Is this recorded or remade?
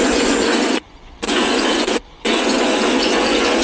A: remade